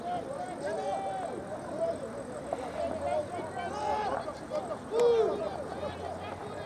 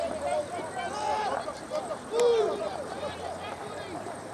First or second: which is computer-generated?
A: second